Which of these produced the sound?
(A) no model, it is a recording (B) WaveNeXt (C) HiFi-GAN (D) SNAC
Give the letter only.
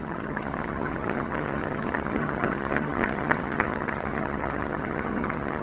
C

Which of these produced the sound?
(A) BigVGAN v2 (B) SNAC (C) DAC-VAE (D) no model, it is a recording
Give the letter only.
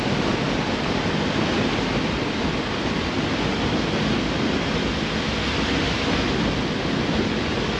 D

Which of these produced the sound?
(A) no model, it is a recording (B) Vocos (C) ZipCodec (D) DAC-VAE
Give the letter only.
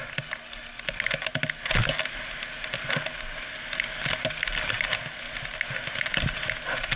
A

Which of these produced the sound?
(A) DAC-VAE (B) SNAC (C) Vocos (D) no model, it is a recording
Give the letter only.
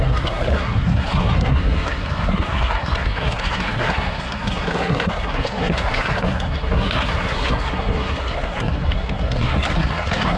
B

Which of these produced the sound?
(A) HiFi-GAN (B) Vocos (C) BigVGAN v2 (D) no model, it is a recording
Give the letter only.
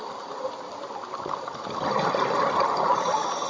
D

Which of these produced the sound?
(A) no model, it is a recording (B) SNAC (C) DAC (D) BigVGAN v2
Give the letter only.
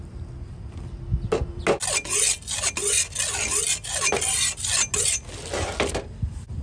A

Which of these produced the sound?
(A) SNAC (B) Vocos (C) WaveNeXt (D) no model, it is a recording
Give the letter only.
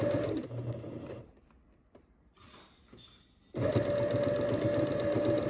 D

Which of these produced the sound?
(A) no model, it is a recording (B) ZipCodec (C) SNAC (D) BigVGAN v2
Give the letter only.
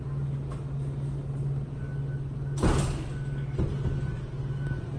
A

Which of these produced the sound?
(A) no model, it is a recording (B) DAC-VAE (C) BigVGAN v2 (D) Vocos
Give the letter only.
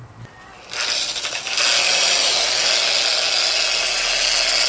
A